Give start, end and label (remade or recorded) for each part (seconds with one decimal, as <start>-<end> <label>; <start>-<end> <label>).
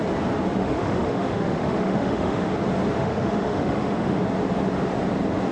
0.0-0.6 recorded; 0.6-2.5 remade; 2.5-3.0 recorded; 3.0-4.2 remade; 4.2-5.5 recorded